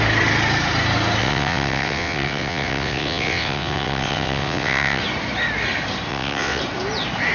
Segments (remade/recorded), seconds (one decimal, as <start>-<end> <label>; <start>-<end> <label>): 0.0-1.2 recorded; 1.2-5.0 remade; 5.0-6.1 recorded; 6.1-6.6 remade; 6.6-7.3 recorded